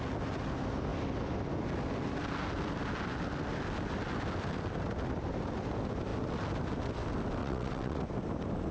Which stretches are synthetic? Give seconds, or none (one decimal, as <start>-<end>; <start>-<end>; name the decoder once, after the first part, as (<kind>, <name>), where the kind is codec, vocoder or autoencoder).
7.4-8.0 (vocoder, WaveNeXt)